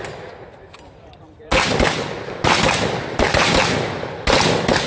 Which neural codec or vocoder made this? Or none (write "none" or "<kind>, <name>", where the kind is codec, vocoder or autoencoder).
none